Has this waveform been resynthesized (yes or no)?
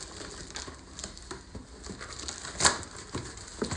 no